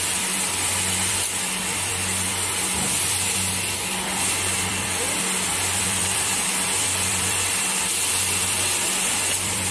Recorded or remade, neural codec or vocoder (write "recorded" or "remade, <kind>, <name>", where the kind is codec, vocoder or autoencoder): remade, vocoder, BigVGAN v2